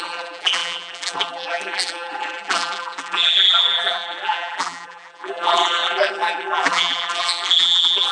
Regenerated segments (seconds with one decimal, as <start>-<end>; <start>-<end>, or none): 0.0-8.1